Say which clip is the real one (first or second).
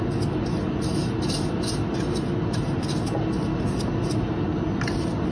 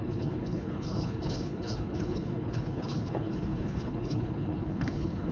first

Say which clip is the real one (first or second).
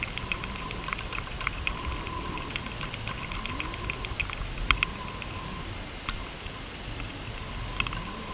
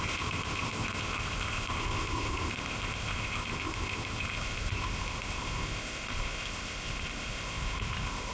first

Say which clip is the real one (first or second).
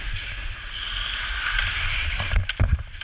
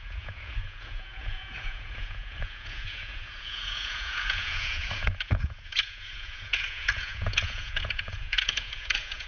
first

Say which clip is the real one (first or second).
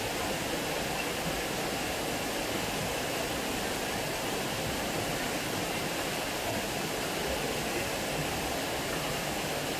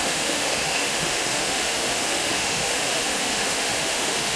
first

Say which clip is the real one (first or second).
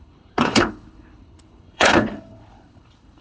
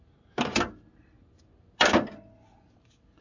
second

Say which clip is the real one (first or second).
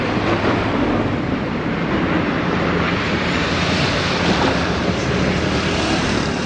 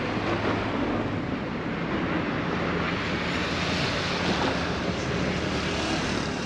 second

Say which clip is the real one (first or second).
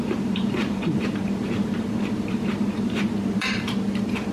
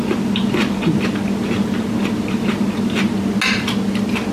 second